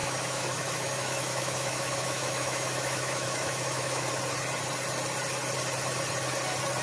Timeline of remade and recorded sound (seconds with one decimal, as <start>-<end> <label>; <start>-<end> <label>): 0.0-4.1 remade; 4.1-6.8 recorded